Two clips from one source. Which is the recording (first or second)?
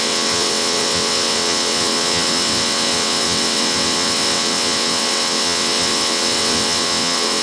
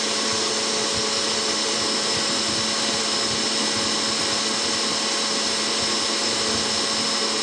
second